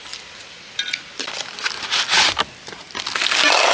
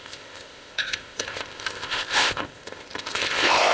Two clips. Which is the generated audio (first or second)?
second